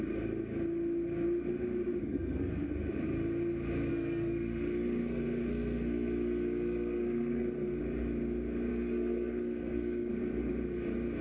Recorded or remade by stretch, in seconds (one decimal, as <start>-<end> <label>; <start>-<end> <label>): 0.0-2.0 recorded; 2.0-2.7 remade; 2.7-3.9 recorded; 3.9-7.8 remade; 7.8-8.7 recorded; 8.7-10.1 remade; 10.1-11.2 recorded